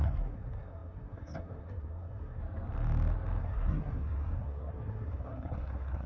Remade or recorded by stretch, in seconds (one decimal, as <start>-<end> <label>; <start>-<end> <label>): 0.0-2.4 remade; 2.4-3.4 recorded; 3.4-6.1 remade